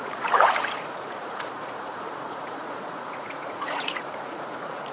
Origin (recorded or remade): remade